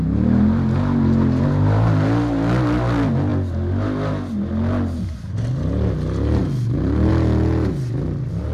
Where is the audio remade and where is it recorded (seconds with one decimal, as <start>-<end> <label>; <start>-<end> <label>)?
0.0-8.5 recorded